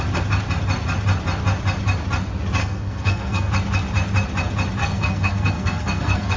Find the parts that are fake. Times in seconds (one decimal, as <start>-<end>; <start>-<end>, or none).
2.6-3.5; 4.8-6.4